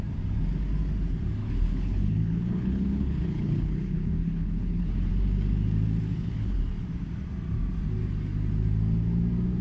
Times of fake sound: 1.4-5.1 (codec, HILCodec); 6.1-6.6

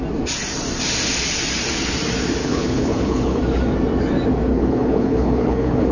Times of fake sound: 2.4-3.4 (codec, HILCodec); 4.5-5.9

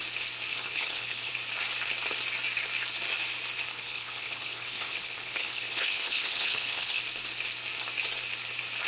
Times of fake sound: 0.5-1.3 (codec, HILCodec); 3.7-7.0

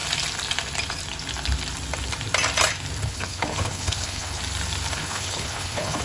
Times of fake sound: 3.0-4.4 (codec, HILCodec); 4.9-6.0

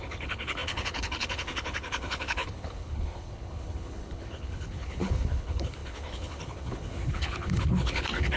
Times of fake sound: 0.0-8.4 (codec, HILCodec)